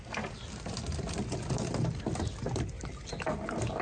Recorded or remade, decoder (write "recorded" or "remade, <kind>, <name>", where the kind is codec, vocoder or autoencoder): recorded